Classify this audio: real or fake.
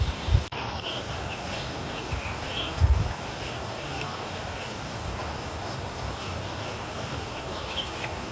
fake